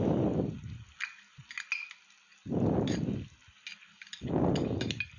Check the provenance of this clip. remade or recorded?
recorded